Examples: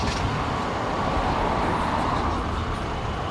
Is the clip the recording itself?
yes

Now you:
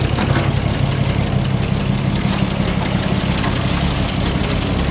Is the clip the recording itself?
yes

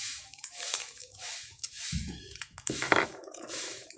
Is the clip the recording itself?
no